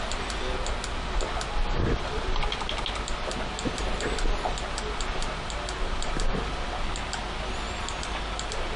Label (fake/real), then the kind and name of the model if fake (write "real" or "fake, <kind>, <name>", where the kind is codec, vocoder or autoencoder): real